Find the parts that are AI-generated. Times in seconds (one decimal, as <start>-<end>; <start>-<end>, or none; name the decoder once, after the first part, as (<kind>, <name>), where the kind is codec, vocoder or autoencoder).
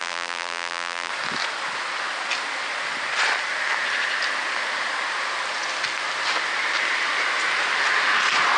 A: 0.0-1.1 (vocoder, BigVGAN v2)